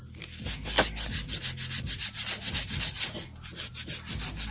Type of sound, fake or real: real